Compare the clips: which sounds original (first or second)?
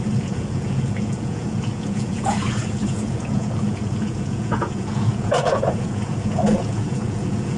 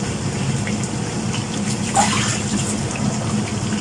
second